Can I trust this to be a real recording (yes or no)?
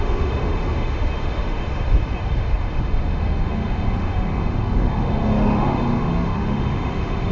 no